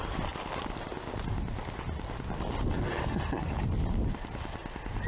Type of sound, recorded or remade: recorded